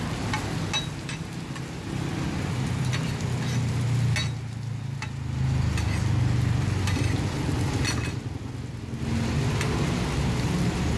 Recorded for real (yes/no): yes